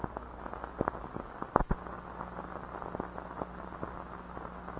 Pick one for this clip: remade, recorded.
recorded